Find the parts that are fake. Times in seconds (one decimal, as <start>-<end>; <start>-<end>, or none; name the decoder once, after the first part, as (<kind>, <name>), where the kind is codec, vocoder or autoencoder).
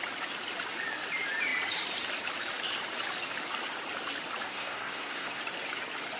4.5-5.4 (codec, SNAC)